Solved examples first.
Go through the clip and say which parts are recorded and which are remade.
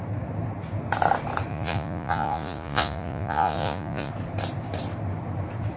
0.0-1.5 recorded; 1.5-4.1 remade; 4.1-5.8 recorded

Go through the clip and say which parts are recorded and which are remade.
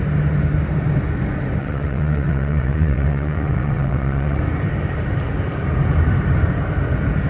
0.0-1.6 recorded; 1.6-4.4 remade; 4.4-7.3 recorded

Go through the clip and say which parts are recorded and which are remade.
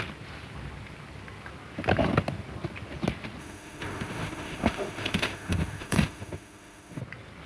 0.0-3.4 recorded; 3.4-7.0 remade; 7.0-7.5 recorded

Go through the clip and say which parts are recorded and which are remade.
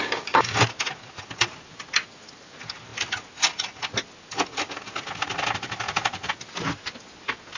0.0-0.6 remade; 0.6-7.6 recorded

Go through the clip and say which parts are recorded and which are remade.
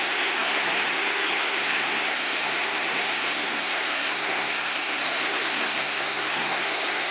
0.0-7.1 remade